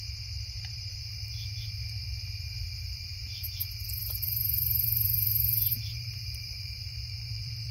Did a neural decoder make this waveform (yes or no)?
yes